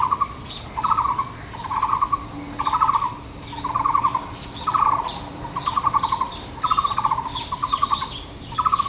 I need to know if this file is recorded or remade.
recorded